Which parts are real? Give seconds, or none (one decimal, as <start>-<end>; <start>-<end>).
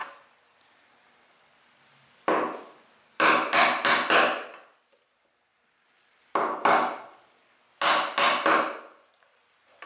0.0-9.9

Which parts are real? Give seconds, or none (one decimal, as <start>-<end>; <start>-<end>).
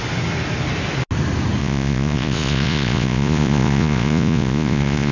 0.0-1.6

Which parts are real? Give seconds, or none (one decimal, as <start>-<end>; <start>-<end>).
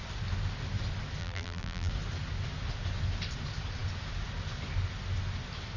0.0-1.2; 1.9-5.8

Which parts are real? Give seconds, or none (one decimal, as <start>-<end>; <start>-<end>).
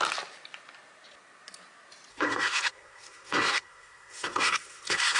0.0-2.1